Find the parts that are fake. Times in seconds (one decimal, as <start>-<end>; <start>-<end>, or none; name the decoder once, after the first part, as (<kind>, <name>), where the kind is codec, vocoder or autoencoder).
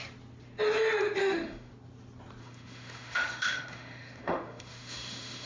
1.2-1.7 (autoencoder, DAC-VAE); 2.4-5.5